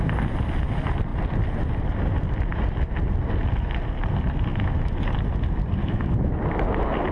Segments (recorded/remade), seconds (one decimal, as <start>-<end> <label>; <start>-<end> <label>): 0.0-4.5 recorded; 4.5-5.0 remade; 5.0-5.8 recorded; 5.8-6.3 remade; 6.3-7.1 recorded